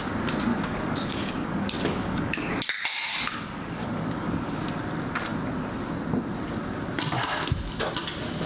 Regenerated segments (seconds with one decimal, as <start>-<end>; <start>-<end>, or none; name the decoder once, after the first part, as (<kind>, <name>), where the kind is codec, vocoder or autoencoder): 0.5-2.5 (codec, DAC); 2.9-4.6